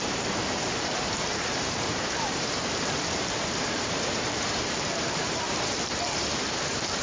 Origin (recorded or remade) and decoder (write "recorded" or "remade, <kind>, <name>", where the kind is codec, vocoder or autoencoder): remade, vocoder, BigVGAN v2